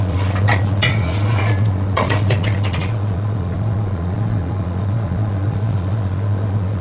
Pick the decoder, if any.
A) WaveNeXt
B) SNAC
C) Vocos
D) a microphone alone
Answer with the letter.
C